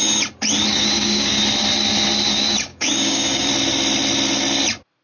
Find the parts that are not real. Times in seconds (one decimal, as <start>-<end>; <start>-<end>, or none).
0.7-1.4; 2.7-3.5